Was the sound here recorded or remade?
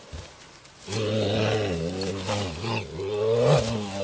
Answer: recorded